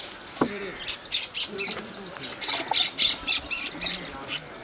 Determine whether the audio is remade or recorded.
recorded